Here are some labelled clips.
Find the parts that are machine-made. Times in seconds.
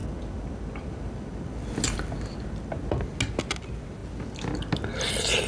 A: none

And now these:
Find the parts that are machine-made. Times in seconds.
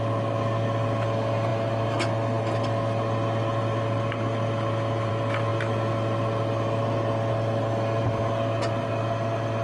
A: none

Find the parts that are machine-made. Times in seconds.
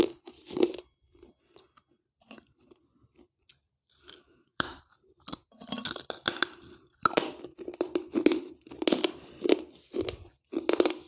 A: 4.2-4.8 (autoencoder, DAC-VAE)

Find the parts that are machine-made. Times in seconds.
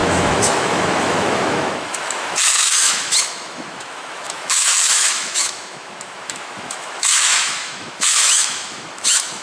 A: 0.0-9.4 (autoencoder, DAC-VAE)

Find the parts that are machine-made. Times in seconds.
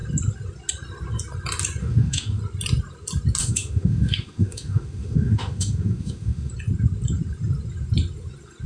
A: 1.8-2.4 (autoencoder, DAC-VAE); 3.4-6.5